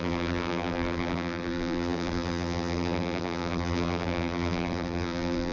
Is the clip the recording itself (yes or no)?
no